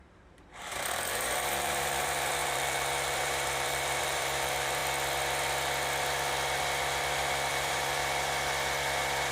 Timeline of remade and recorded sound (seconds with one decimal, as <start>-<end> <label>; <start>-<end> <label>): 0.0-4.8 remade; 4.8-7.5 recorded; 7.5-8.0 remade; 8.0-9.3 recorded